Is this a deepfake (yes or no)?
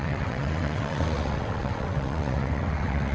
yes